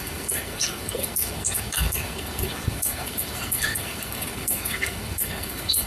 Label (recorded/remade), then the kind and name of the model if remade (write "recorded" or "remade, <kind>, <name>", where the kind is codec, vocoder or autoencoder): remade, codec, SNAC